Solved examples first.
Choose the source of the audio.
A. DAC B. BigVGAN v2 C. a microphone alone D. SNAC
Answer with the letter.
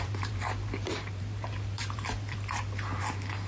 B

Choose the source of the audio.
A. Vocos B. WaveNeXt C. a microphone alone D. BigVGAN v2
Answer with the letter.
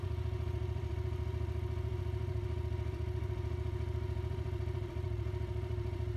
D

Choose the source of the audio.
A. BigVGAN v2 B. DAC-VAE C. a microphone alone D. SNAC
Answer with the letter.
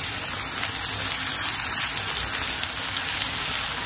C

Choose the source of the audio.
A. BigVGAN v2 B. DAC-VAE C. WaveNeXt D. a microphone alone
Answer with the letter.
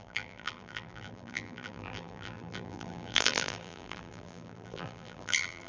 A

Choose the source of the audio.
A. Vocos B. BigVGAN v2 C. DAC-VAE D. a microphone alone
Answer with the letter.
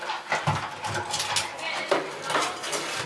D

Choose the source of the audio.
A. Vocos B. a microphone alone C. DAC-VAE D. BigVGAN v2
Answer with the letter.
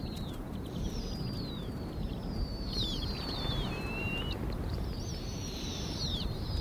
D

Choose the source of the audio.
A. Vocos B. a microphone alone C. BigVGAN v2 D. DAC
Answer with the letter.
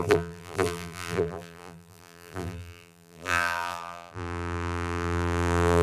C